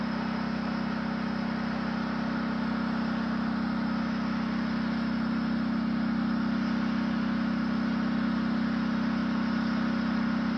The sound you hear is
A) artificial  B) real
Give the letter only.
B